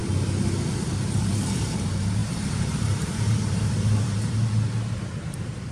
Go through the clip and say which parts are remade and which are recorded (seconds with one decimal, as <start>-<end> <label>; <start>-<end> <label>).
0.0-0.7 recorded; 0.7-5.7 remade